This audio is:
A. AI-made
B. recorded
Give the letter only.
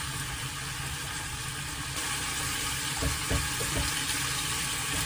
B